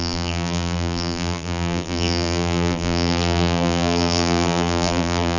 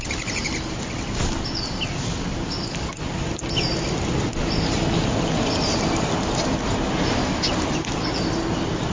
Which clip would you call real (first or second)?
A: second